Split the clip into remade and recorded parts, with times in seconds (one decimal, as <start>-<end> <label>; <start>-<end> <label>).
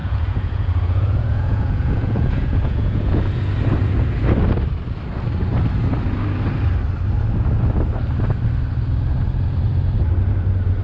0.0-3.3 remade; 3.3-10.8 recorded